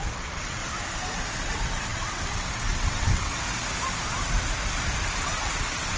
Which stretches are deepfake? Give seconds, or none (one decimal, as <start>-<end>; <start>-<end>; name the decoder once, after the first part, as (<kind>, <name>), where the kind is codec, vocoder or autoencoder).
0.0-0.6 (vocoder, WaveNeXt); 1.4-3.3; 5.2-6.0